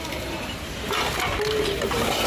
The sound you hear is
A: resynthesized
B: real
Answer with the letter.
B